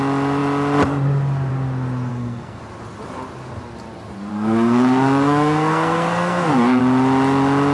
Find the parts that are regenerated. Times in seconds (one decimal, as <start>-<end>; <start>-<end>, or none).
2.1-2.6; 4.3-6.8